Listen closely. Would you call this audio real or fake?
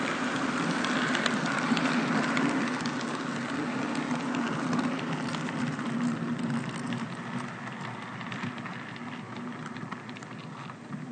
real